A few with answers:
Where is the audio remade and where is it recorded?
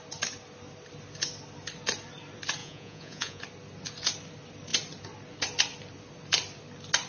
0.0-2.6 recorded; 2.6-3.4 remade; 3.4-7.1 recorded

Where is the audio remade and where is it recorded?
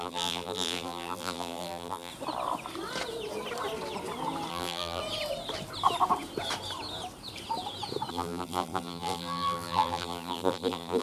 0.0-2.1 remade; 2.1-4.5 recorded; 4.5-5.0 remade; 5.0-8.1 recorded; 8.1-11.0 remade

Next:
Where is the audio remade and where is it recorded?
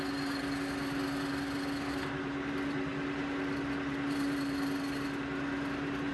0.0-2.9 remade; 2.9-3.7 recorded; 3.7-6.1 remade